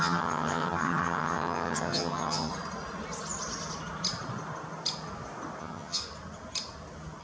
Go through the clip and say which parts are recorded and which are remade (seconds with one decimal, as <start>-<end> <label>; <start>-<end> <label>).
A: 0.0-2.5 remade; 2.5-5.6 recorded; 5.6-6.0 remade; 6.0-7.2 recorded